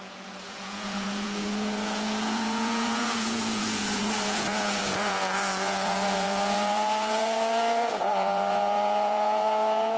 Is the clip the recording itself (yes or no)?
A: no